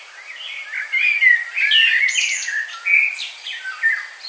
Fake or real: real